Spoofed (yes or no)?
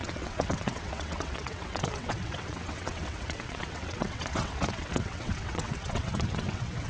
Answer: yes